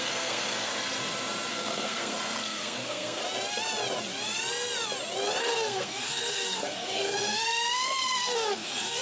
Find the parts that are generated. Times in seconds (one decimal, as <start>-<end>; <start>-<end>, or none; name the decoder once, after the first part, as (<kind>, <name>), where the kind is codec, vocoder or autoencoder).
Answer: 0.0-0.7 (codec, SNAC); 1.5-3.2; 5.4-9.0